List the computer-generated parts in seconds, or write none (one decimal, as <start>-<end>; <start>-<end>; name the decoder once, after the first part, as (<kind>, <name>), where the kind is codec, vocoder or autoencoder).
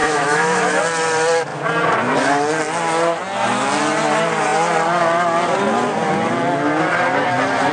0.0-0.8 (autoencoder, DAC-VAE)